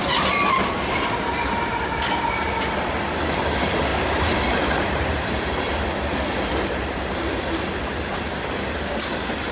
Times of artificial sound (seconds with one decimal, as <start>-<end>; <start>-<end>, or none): 3.9-6.0